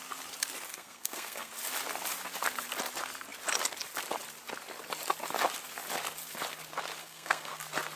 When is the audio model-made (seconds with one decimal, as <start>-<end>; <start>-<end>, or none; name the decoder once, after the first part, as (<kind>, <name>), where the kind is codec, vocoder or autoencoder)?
0.7-1.5 (codec, SNAC); 7.0-7.6